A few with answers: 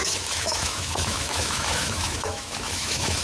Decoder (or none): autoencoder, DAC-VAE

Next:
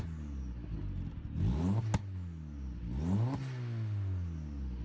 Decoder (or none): none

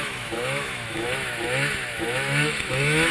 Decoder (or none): autoencoder, DAC-VAE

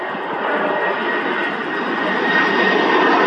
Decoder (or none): none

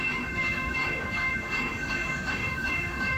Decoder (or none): autoencoder, DAC-VAE